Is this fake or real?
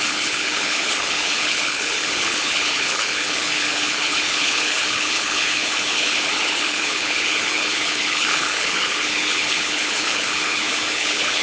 fake